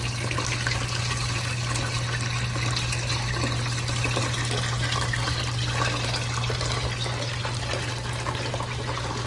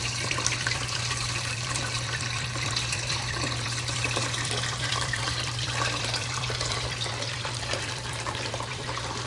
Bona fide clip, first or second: first